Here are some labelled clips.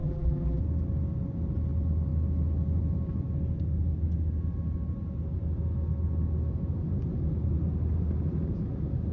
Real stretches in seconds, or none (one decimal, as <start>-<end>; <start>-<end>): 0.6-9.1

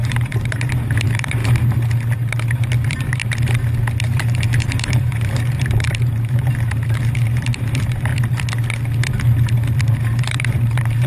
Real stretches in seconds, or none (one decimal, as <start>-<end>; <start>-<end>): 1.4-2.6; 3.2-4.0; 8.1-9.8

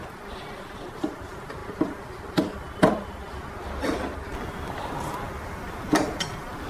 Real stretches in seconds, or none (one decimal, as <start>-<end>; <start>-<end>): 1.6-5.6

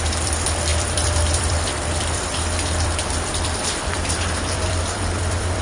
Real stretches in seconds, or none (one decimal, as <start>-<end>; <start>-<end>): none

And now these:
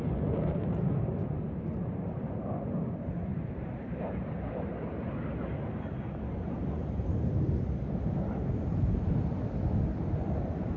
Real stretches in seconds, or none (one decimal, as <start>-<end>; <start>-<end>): 0.0-3.3; 4.5-6.8; 9.4-10.8